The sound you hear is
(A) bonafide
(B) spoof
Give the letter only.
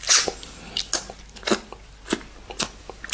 A